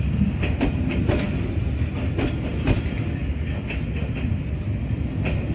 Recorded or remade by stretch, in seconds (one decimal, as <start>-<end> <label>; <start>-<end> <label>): 0.0-5.5 recorded